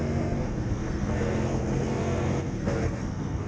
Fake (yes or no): yes